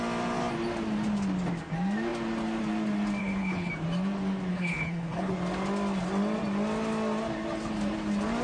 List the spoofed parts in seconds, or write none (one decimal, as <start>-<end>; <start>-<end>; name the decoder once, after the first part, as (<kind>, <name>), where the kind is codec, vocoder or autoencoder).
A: 3.2-3.7 (codec, HILCodec); 4.5-5.3